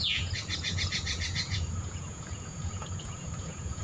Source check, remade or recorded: remade